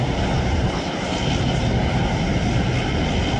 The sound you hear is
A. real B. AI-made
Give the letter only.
A